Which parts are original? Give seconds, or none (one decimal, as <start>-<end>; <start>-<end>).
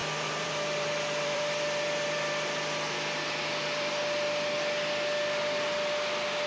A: 3.9-6.5